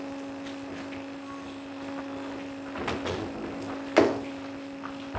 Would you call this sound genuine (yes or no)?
yes